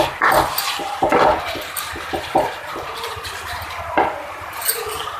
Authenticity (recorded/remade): recorded